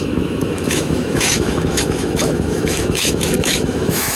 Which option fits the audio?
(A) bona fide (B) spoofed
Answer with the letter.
B